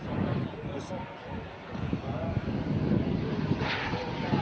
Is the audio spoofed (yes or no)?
no